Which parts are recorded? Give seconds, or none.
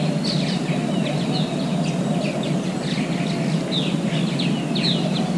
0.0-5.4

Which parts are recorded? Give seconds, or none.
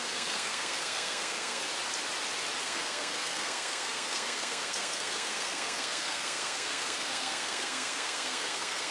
1.7-2.6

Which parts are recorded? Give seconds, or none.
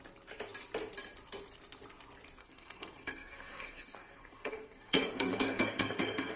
0.0-2.4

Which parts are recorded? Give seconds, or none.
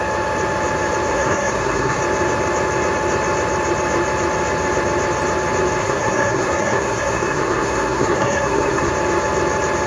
0.0-1.1; 2.0-5.8; 8.9-9.9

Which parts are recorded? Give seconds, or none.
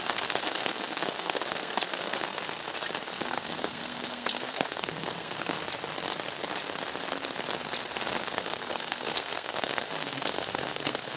2.6-3.1; 5.6-8.2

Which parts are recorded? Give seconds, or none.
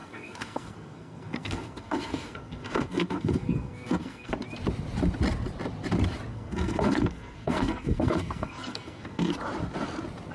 4.3-6.3; 9.3-10.3